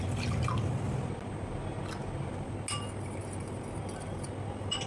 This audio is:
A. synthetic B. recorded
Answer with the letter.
B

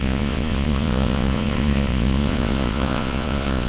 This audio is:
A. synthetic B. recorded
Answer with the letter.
A